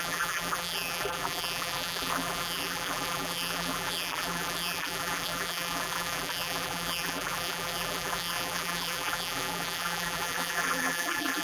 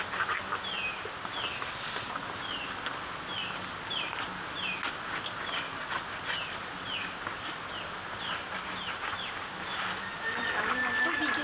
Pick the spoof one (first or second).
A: first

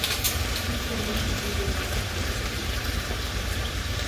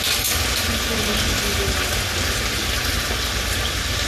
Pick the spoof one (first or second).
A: first